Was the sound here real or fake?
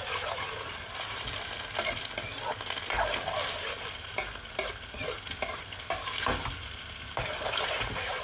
real